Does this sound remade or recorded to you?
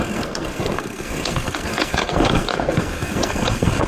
remade